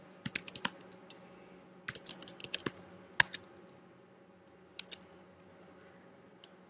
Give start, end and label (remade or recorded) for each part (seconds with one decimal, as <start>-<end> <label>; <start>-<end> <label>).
0.0-6.7 recorded